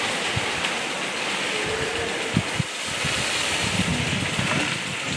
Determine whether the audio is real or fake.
real